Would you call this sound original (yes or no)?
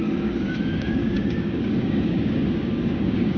no